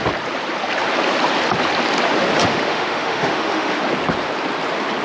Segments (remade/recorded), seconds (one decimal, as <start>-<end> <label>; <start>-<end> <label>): 0.0-2.4 recorded; 2.4-3.8 remade; 3.8-5.0 recorded